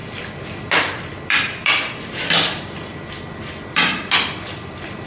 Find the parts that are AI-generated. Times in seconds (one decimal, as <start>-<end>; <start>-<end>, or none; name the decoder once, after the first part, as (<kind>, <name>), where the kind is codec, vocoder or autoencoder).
none

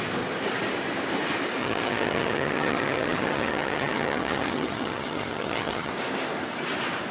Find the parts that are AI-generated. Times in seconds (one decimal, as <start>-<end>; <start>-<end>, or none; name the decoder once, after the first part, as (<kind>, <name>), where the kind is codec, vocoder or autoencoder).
1.6-5.9 (vocoder, HiFi-GAN)

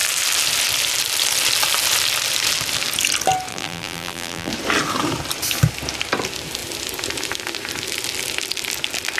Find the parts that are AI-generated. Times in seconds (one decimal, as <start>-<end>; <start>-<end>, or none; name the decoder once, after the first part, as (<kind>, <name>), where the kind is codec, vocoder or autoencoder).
3.5-4.5 (vocoder, BigVGAN v2)

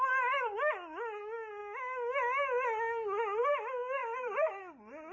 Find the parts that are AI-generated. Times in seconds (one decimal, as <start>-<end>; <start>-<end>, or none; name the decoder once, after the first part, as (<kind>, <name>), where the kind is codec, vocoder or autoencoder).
4.0-4.6 (vocoder, BigVGAN v2)

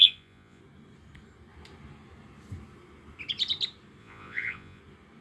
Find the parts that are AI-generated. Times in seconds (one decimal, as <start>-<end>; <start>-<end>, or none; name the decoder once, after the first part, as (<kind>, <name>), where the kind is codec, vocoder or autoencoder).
0.0-0.6 (vocoder, Vocos); 4.0-4.8